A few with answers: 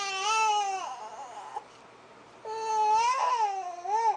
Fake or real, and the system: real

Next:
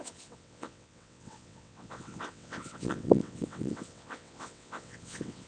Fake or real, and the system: fake, vocoder, WaveNeXt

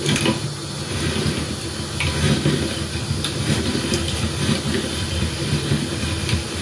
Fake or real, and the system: real